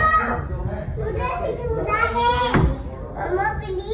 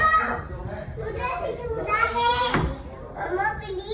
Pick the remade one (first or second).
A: second